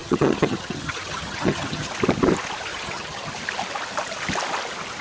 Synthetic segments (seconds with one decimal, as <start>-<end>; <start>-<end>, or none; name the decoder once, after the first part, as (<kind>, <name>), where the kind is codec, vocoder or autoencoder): 0.0-1.9 (vocoder, HiFi-GAN); 2.7-3.3